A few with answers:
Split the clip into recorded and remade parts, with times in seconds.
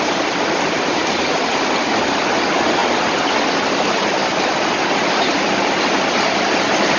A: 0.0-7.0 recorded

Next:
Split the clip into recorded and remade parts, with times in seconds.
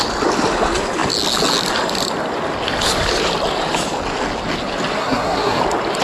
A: 0.0-5.0 recorded; 5.0-5.6 remade; 5.6-6.0 recorded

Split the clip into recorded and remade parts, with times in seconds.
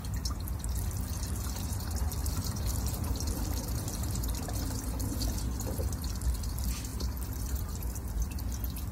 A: 0.0-2.2 recorded; 2.2-3.3 remade; 3.3-6.9 recorded; 6.9-7.6 remade; 7.6-8.9 recorded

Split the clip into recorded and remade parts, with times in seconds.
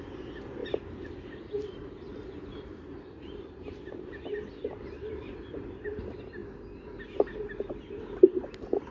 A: 0.0-0.6 recorded; 0.6-1.9 remade; 1.9-2.5 recorded; 2.5-3.7 remade; 3.7-5.1 recorded; 5.1-5.8 remade; 5.8-8.9 recorded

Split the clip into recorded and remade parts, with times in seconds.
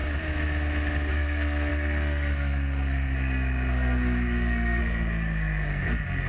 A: 0.0-1.1 recorded; 1.1-6.3 remade